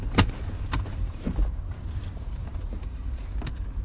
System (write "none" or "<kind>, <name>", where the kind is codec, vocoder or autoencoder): vocoder, BigVGAN v2